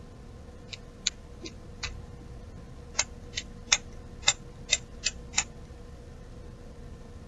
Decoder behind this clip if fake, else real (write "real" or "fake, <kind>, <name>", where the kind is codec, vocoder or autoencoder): real